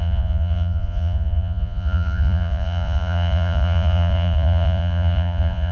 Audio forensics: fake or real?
fake